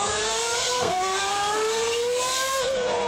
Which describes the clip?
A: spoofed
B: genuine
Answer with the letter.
A